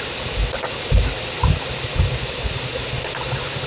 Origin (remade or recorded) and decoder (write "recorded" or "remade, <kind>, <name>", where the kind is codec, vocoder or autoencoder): recorded